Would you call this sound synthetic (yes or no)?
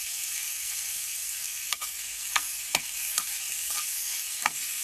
yes